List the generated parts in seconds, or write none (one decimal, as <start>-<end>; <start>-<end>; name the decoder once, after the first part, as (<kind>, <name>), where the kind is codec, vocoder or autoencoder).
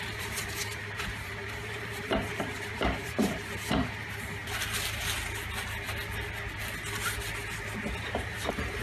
0.0-4.4 (vocoder, BigVGAN v2); 8.0-8.8